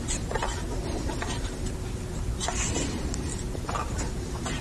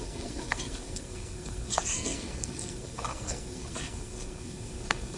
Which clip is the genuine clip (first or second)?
first